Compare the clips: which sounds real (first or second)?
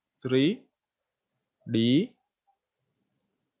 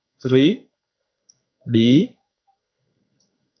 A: first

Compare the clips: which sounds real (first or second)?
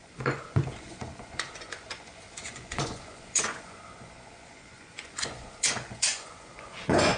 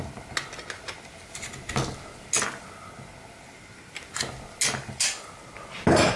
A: second